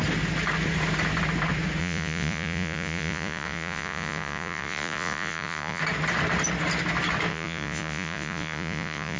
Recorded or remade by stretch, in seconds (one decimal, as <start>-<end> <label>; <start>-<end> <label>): 0.0-1.8 recorded; 1.8-5.8 remade; 5.8-7.3 recorded; 7.3-9.2 remade